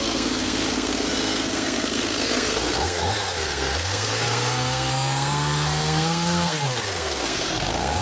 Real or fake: fake